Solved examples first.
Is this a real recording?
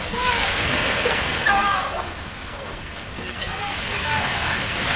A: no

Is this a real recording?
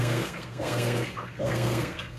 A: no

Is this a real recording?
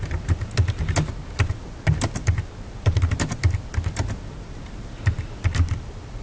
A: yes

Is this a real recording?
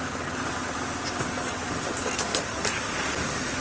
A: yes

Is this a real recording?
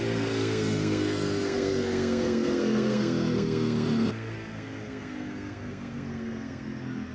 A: no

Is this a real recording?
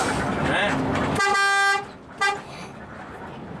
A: yes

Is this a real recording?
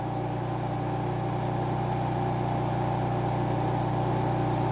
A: yes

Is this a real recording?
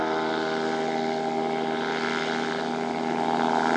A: yes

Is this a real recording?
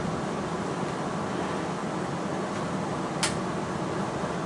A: yes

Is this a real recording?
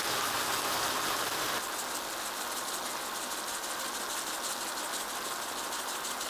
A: yes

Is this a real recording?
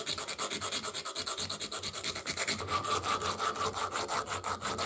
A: yes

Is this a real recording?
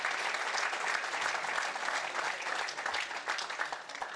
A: yes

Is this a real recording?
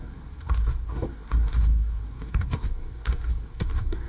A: no